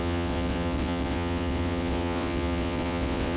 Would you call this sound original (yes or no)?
no